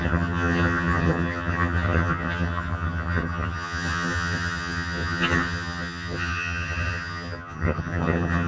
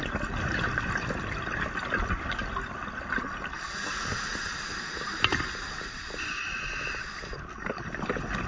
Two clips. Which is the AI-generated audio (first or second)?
first